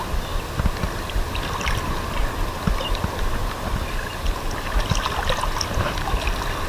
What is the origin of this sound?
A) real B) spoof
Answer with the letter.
A